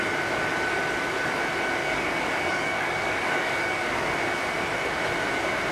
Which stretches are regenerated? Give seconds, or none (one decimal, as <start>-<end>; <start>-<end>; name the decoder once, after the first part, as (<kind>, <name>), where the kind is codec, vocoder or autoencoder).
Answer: 1.8-4.1 (codec, DAC)